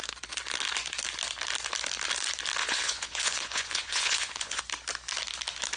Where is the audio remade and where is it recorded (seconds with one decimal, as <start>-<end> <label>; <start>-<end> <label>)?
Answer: 0.0-2.6 recorded; 2.6-4.6 remade; 4.6-5.8 recorded